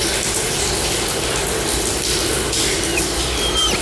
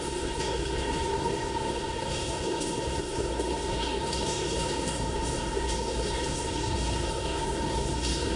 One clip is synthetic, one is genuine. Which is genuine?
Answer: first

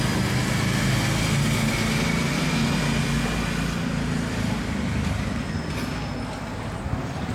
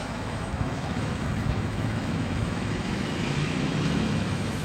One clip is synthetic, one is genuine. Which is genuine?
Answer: first